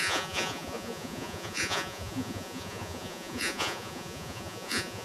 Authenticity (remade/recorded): remade